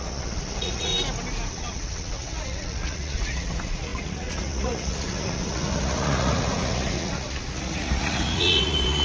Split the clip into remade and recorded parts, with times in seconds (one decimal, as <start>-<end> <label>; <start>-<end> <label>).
0.0-0.9 remade; 0.9-1.5 recorded; 1.5-9.0 remade